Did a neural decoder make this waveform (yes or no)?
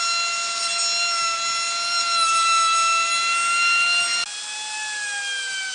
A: no